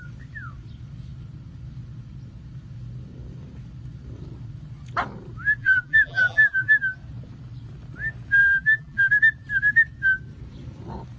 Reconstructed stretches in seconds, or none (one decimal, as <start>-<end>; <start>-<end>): 5.6-6.8; 8.4-9.1